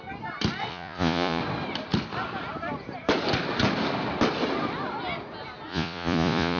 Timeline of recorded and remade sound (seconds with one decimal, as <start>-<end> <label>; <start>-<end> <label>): 0.0-0.7 recorded; 0.7-1.4 remade; 1.4-5.7 recorded; 5.7-6.6 remade